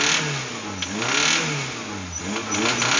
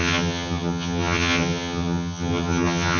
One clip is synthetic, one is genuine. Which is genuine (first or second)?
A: first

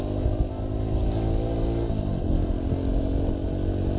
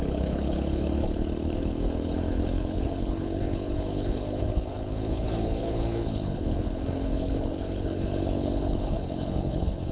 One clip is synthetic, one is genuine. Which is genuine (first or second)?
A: first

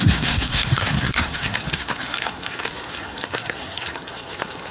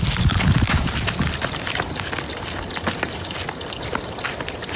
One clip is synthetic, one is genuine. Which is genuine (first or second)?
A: second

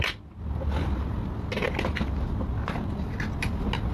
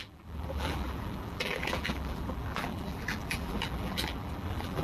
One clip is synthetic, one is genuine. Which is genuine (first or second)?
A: first